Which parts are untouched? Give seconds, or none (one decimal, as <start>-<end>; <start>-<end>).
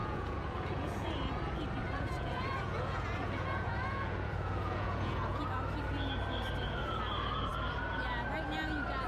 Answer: 1.1-1.8; 5.4-9.1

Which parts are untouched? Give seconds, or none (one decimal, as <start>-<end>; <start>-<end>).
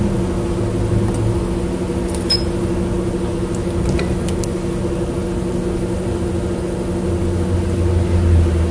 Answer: 0.0-8.7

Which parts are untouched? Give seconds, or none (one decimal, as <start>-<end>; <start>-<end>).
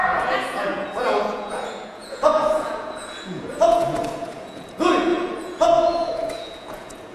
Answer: none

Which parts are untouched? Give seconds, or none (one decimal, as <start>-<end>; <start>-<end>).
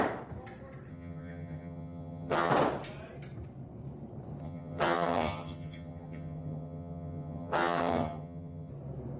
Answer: 0.0-0.9; 2.5-4.4; 8.7-9.2